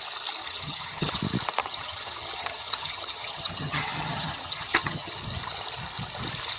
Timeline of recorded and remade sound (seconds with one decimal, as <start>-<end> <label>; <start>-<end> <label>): 0.0-0.4 recorded; 0.4-1.2 remade; 1.2-1.6 recorded; 1.6-5.1 remade; 5.1-6.6 recorded